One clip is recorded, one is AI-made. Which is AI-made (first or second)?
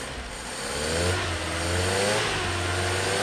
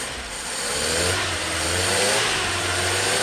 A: second